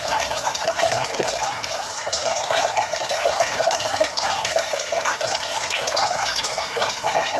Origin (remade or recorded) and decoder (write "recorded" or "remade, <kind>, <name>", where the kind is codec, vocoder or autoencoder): remade, codec, SNAC